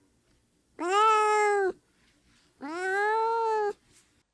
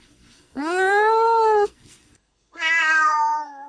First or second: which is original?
first